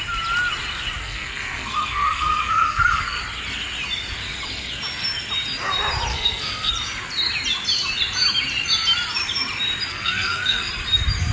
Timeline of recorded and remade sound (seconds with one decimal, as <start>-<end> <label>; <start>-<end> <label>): 0.0-1.0 recorded; 1.0-3.2 remade; 3.2-6.1 recorded; 6.1-6.7 remade; 6.7-9.9 recorded; 9.9-10.7 remade; 10.7-11.3 recorded